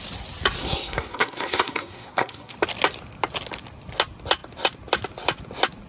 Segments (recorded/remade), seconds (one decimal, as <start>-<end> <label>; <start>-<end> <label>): 0.0-0.6 recorded; 0.6-2.5 remade; 2.5-5.9 recorded